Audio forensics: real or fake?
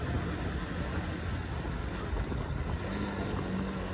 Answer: real